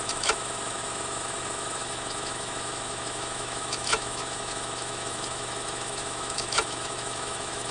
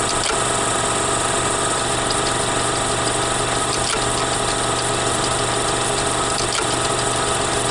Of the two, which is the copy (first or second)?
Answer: first